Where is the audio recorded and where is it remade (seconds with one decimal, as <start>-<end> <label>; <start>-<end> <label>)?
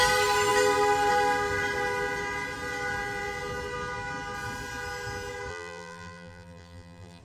0.0-5.5 recorded; 5.5-7.2 remade